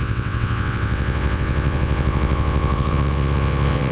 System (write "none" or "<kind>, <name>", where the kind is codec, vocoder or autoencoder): vocoder, WaveNeXt